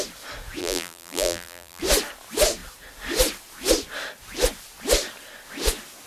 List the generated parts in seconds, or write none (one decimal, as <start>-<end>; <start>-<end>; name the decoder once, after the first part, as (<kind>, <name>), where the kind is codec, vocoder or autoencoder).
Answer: 0.6-1.8 (vocoder, BigVGAN v2)